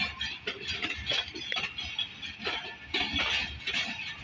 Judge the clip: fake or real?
real